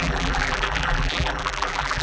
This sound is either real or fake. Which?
fake